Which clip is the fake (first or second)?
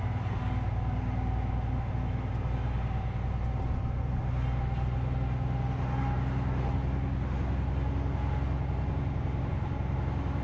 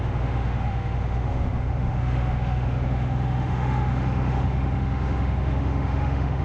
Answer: second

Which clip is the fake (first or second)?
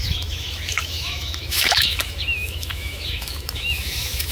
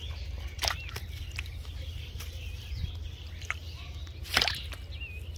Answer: first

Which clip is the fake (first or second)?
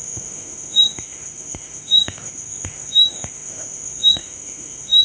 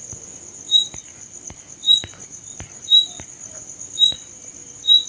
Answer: first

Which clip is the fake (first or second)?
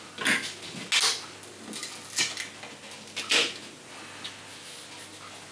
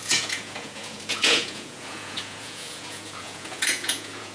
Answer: second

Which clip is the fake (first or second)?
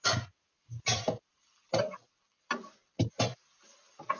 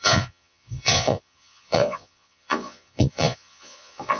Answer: second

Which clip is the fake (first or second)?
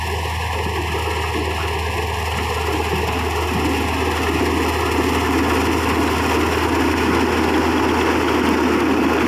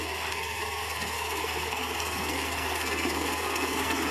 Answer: second